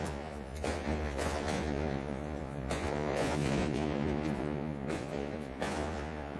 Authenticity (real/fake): fake